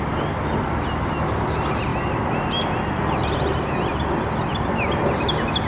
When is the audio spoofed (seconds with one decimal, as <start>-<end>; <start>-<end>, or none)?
none